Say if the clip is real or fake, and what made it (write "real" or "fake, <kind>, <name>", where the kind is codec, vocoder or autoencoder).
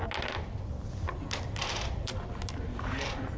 real